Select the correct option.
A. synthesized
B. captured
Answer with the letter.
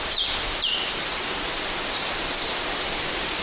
A